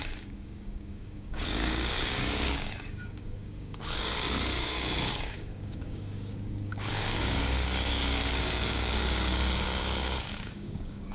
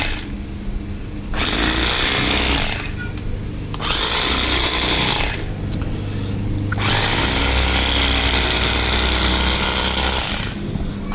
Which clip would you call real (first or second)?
second